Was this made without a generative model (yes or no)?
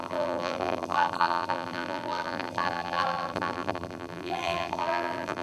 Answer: no